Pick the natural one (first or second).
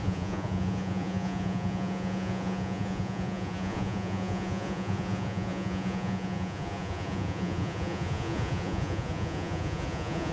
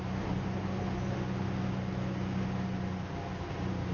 second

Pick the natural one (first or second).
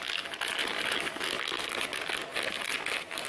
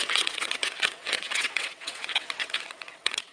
first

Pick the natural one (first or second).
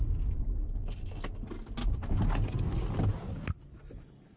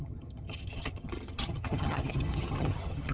first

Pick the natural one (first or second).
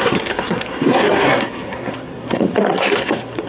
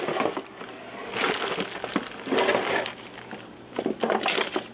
second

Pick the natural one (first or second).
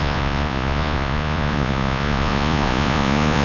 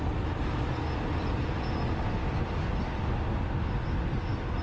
second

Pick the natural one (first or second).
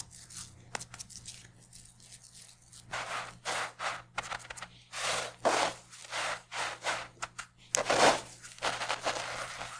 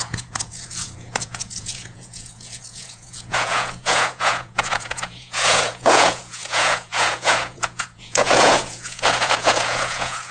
first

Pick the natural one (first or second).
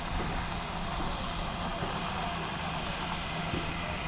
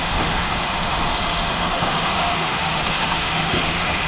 first